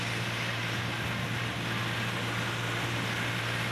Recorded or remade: recorded